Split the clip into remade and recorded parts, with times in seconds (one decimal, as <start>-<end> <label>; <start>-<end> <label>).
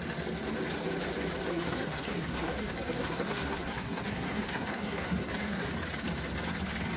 0.0-1.5 recorded; 1.5-5.7 remade; 5.7-7.0 recorded